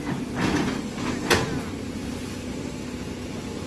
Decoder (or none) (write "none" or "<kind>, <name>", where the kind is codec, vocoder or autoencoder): none